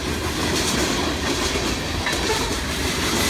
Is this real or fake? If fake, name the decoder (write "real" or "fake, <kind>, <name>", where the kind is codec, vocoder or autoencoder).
real